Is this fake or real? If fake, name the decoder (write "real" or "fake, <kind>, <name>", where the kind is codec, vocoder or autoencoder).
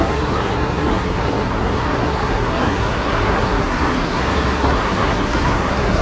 fake, codec, SNAC